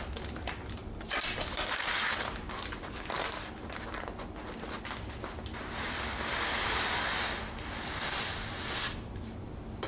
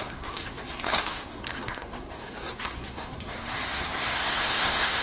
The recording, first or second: first